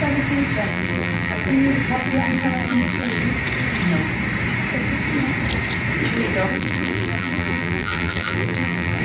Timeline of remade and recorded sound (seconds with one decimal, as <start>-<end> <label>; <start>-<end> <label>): 0.0-0.7 recorded; 0.7-1.5 remade; 1.5-2.0 recorded; 2.0-3.2 remade; 3.2-6.5 recorded; 6.5-9.0 remade